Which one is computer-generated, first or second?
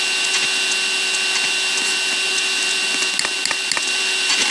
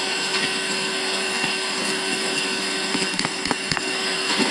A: second